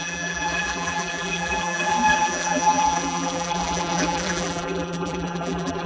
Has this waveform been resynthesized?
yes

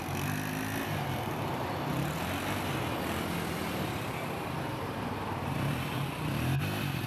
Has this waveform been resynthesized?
no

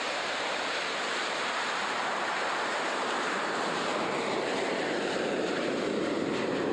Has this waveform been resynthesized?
yes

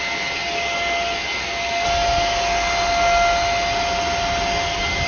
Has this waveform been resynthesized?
no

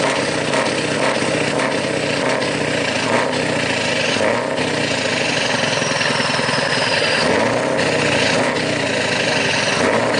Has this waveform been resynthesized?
no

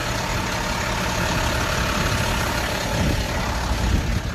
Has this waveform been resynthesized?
no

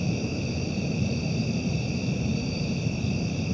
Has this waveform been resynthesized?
yes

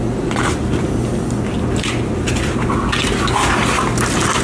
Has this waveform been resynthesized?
no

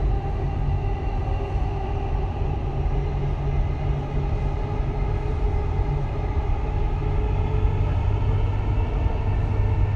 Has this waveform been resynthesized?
no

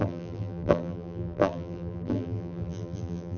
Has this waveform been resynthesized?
yes